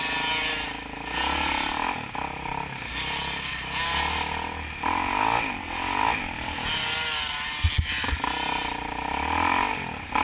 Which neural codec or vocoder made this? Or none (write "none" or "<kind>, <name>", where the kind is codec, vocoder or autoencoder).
none